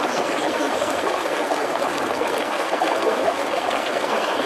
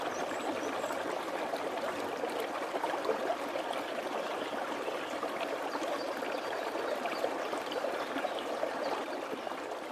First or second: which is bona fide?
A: second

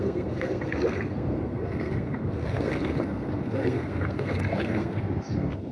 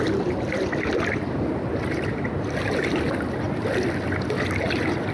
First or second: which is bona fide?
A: second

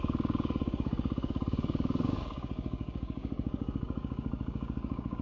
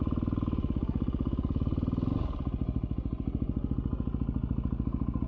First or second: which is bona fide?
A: second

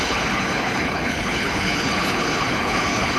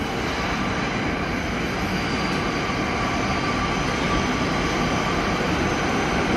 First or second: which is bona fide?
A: second